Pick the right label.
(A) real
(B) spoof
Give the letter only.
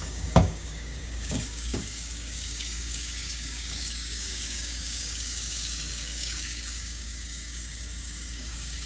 B